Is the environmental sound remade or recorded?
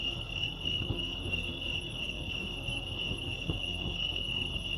remade